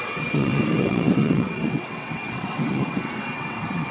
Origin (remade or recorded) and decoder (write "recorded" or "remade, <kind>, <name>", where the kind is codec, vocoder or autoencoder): remade, vocoder, WaveNeXt